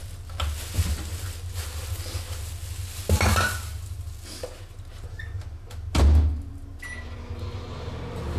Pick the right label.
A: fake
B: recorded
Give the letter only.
B